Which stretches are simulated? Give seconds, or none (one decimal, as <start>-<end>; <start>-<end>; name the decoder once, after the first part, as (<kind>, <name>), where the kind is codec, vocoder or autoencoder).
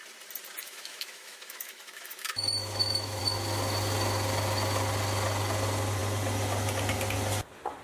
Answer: 0.6-3.2 (autoencoder, DAC-VAE)